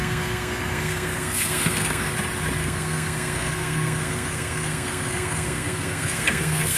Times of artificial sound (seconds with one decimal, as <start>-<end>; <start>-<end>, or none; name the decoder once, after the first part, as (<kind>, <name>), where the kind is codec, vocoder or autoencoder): 0.0-2.1 (codec, SNAC); 2.6-6.8